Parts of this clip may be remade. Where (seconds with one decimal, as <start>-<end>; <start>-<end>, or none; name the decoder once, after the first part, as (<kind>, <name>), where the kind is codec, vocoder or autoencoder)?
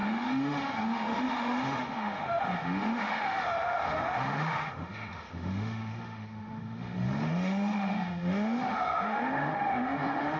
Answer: 0.0-10.4 (autoencoder, DAC-VAE)